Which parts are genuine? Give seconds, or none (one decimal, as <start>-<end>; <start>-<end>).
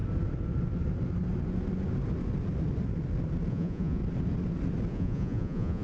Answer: 0.0-3.5; 4.0-4.9